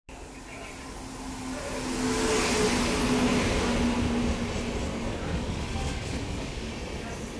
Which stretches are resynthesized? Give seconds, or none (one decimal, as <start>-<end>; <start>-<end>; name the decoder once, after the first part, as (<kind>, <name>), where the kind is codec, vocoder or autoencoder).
4.9-6.7 (codec, DAC)